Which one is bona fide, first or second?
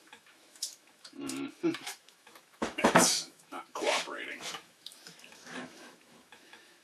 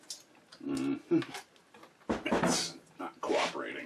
second